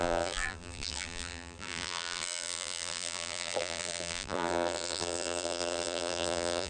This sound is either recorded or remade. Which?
remade